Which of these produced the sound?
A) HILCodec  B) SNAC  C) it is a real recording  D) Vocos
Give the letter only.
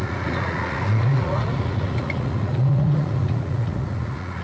D